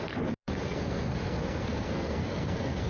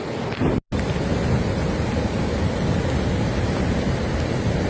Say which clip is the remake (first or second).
first